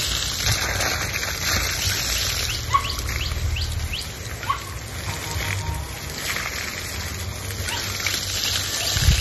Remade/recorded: recorded